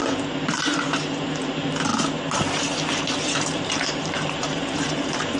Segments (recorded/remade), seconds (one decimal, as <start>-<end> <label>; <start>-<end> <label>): 0.0-0.5 recorded; 0.5-1.9 remade; 1.9-3.2 recorded; 3.2-5.4 remade